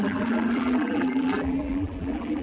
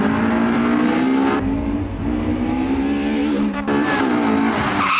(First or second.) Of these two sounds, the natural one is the second